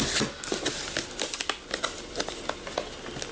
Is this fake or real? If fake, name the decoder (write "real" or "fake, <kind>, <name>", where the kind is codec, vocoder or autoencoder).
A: real